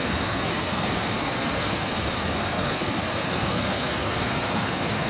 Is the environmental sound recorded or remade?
remade